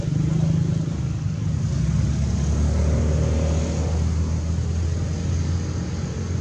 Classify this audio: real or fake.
real